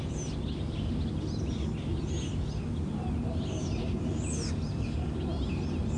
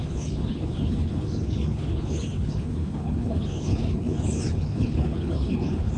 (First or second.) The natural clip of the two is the first